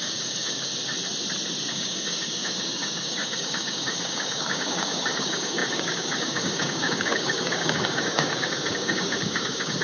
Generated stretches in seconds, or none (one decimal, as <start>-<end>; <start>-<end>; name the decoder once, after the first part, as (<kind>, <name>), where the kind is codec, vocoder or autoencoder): 0.0-0.7 (codec, DAC); 1.7-9.8

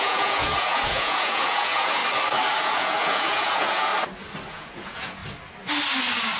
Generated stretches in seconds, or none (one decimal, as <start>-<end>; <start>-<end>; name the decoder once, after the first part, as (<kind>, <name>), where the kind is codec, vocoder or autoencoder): 0.0-2.0 (vocoder, Vocos); 2.6-3.9; 4.5-5.2

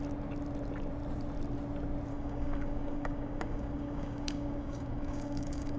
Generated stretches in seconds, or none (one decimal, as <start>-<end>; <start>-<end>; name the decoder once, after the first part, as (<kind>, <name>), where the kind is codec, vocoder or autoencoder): 2.1-5.8 (codec, DAC)

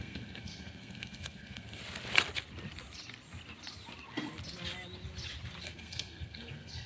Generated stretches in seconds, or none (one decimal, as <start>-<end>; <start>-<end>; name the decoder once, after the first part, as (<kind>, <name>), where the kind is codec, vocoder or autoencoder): 0.0-1.8 (codec, SNAC); 5.6-6.9